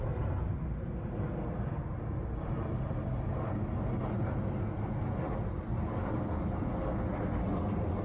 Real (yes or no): yes